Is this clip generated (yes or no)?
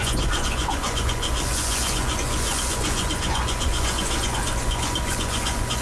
yes